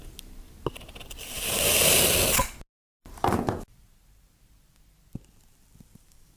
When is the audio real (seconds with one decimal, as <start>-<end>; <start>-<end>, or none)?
0.0-6.4